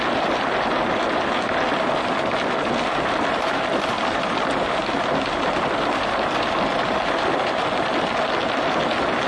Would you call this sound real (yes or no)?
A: yes